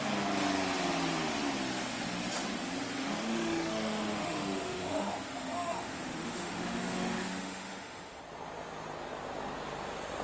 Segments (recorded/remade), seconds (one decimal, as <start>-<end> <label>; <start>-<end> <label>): 0.0-3.0 recorded; 3.0-8.2 remade; 8.2-10.2 recorded